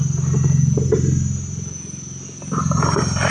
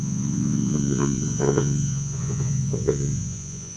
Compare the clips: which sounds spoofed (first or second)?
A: second